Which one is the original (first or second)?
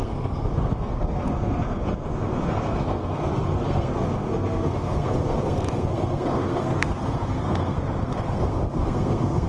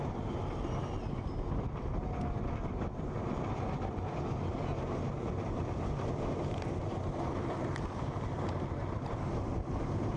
second